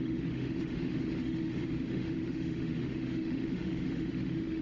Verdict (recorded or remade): remade